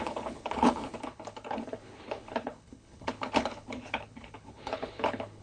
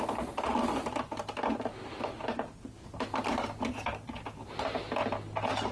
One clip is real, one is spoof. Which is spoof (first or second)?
first